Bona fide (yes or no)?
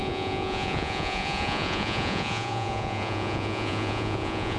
no